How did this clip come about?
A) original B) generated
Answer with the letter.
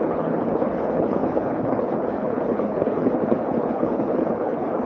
B